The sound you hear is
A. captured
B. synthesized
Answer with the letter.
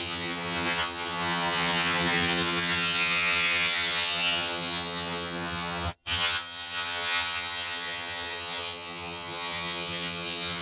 B